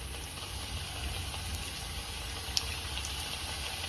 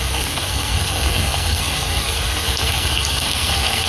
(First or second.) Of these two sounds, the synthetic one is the second